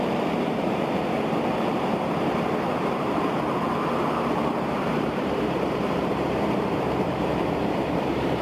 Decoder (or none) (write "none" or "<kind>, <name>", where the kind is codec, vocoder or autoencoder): vocoder, BigVGAN v2